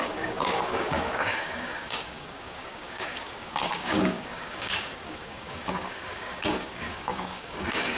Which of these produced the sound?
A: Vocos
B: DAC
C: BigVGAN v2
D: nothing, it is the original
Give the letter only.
B